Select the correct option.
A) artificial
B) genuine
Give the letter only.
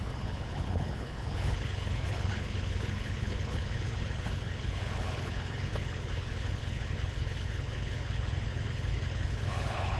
A